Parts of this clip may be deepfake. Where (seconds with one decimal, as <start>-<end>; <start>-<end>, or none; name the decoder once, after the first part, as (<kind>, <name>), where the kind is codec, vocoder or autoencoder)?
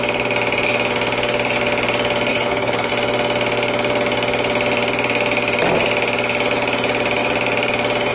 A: 2.3-2.9 (codec, HILCodec)